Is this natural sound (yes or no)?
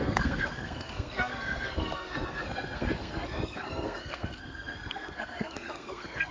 no